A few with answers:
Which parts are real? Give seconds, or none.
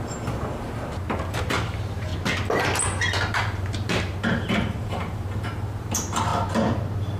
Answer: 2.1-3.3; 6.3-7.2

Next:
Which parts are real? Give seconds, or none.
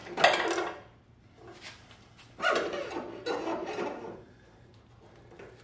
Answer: 0.0-3.6; 4.7-5.6